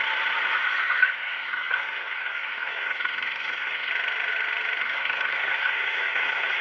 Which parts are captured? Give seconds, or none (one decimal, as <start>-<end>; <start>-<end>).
0.0-1.0; 3.9-4.8